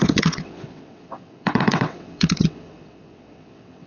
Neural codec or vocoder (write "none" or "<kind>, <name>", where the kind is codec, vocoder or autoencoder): vocoder, WaveNeXt